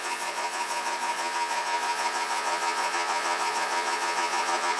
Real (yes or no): no